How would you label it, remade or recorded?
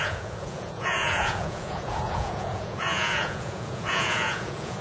remade